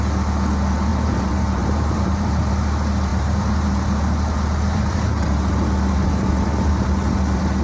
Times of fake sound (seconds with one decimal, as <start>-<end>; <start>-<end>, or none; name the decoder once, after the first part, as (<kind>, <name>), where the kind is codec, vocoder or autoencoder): 0.9-2.5 (vocoder, BigVGAN v2); 3.1-5.0